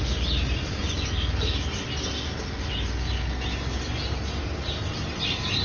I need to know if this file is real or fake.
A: real